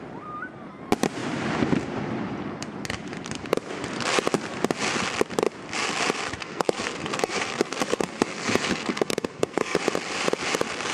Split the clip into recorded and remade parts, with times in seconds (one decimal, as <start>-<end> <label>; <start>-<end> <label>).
0.0-6.4 recorded; 6.4-9.8 remade; 9.8-10.9 recorded

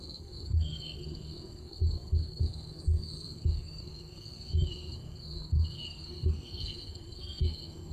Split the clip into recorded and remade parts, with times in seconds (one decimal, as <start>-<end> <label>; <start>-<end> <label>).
0.0-7.9 remade

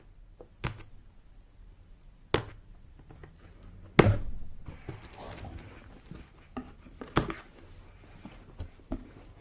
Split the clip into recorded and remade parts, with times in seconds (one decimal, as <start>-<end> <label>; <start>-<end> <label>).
0.0-9.4 recorded

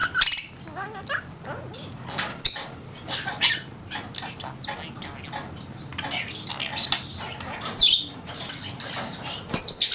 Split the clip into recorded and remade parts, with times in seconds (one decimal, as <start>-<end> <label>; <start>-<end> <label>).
0.0-9.9 recorded

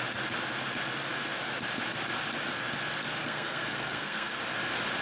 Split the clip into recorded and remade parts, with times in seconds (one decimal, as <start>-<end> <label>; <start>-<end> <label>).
0.0-3.2 recorded; 3.2-4.4 remade; 4.4-5.0 recorded

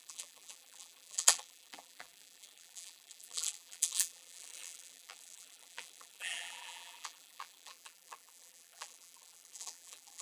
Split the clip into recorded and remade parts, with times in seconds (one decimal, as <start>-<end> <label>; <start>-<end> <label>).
0.0-10.2 remade

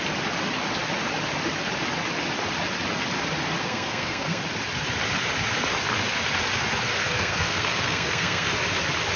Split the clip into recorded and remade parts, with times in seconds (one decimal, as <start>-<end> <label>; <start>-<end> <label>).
0.0-3.6 recorded; 3.6-4.4 remade; 4.4-7.0 recorded; 7.0-8.5 remade; 8.5-9.2 recorded